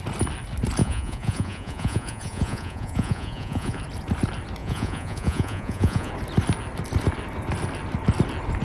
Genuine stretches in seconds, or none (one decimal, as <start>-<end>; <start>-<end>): 0.0-0.8; 3.8-4.6; 6.1-8.6